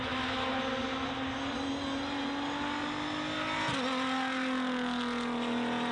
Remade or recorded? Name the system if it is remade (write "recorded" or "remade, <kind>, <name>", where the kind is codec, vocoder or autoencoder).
recorded